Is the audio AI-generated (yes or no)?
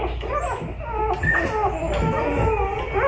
no